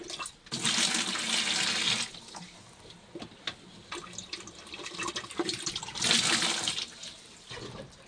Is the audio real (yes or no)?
yes